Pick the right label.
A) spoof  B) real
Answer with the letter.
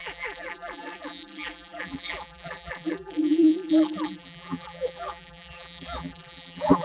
A